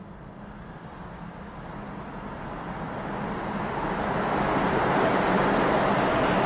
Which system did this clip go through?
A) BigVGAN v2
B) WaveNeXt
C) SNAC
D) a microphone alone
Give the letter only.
D